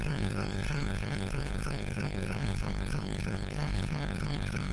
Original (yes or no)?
no